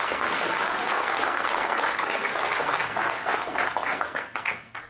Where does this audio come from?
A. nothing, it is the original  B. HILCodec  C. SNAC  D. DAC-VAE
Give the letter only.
C